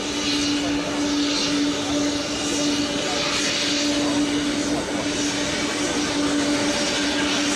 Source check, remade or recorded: recorded